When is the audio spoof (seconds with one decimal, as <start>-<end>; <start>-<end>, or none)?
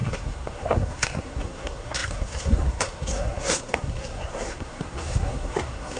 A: 0.0-6.0